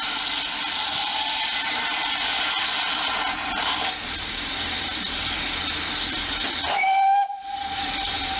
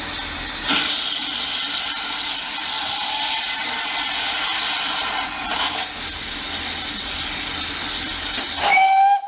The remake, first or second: first